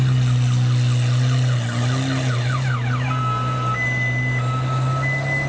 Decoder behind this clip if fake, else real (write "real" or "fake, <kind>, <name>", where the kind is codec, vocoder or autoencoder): real